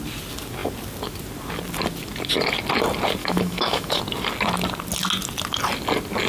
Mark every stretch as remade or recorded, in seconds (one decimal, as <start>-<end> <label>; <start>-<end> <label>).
0.0-3.2 recorded; 3.2-4.0 remade; 4.0-6.3 recorded